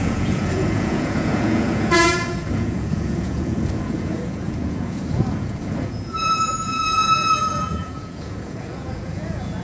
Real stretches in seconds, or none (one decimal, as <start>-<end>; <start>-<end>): none

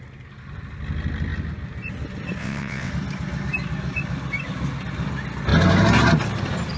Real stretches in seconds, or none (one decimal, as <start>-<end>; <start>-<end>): 0.0-2.4; 2.9-6.8

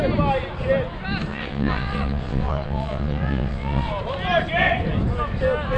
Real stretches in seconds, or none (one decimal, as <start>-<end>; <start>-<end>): 0.0-1.3; 3.9-5.8

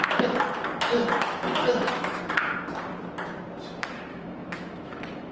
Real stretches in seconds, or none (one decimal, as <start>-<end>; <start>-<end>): 0.0-1.0; 2.2-4.1

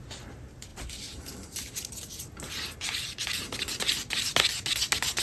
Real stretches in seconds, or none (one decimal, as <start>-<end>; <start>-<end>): 0.0-5.2